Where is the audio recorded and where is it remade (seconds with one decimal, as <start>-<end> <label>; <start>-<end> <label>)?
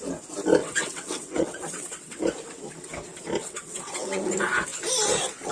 0.0-0.6 recorded; 0.6-2.2 remade; 2.2-3.4 recorded; 3.4-4.3 remade; 4.3-5.5 recorded